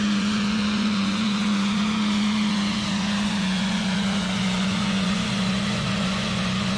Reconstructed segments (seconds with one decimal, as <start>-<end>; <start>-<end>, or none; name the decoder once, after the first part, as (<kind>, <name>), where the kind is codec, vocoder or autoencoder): 0.0-6.8 (vocoder, Vocos)